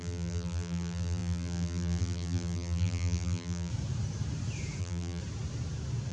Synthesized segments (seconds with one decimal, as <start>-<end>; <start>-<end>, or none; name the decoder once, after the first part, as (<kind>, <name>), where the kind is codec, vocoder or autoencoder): 0.0-3.7 (vocoder, BigVGAN v2); 4.8-5.2